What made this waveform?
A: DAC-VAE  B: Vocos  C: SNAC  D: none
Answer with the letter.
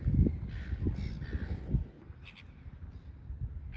D